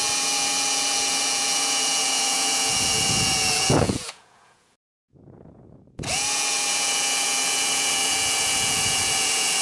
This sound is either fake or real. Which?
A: fake